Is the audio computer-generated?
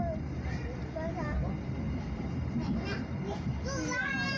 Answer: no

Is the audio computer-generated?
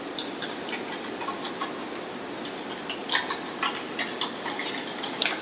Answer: no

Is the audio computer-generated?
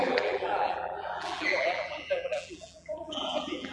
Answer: yes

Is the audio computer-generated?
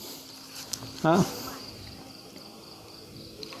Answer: no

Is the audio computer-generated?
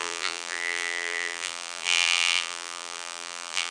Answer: yes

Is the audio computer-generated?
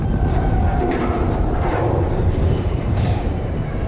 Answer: yes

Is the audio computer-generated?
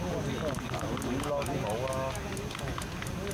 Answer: no